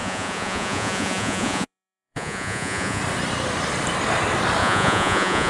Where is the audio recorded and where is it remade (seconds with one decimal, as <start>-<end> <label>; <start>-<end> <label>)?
0.0-3.0 remade; 3.0-4.6 recorded; 4.6-5.5 remade